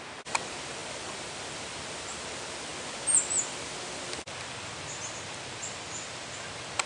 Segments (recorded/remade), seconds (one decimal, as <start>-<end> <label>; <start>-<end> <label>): 0.0-6.9 recorded